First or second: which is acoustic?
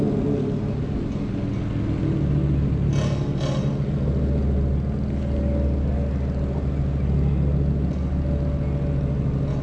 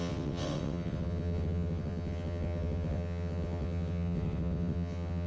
first